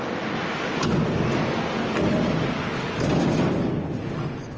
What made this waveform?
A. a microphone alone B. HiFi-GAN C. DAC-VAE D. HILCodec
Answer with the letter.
A